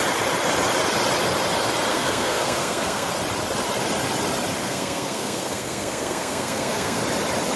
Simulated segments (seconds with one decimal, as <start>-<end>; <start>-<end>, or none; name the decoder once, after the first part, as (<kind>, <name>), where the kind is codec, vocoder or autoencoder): 1.9-3.1 (codec, SNAC); 4.6-7.0